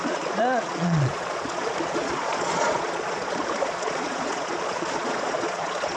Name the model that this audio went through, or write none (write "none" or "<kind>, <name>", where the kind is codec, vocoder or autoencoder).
vocoder, Vocos